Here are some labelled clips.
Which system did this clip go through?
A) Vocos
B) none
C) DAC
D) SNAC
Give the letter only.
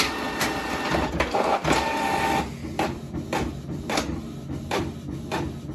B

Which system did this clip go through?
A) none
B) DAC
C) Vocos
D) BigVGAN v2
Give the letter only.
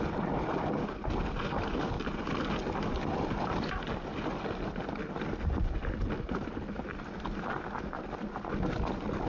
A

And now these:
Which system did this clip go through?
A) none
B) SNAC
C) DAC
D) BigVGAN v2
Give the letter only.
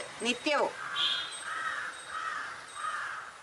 A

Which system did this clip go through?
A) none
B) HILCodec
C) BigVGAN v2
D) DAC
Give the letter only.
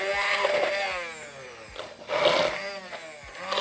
A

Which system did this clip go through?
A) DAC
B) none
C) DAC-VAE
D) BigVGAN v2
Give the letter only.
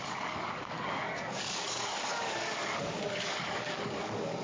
A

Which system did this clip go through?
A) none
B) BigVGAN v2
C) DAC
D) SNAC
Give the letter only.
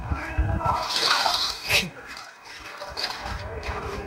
C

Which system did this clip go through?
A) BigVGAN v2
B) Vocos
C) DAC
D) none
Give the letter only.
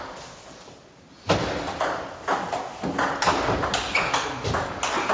D